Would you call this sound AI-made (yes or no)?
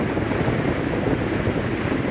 no